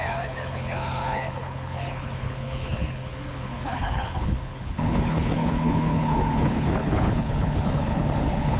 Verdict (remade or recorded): remade